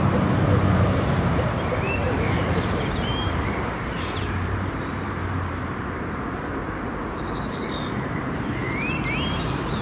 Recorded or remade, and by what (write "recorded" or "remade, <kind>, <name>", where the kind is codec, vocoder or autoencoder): remade, vocoder, BigVGAN v2